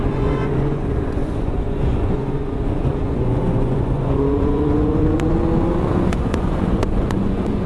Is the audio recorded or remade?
remade